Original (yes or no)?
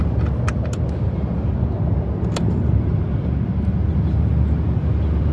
yes